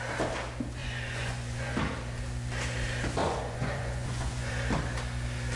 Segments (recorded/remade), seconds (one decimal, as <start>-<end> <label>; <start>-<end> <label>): 0.0-0.8 recorded; 0.8-1.8 remade; 1.8-3.2 recorded; 3.2-4.5 remade; 4.5-5.6 recorded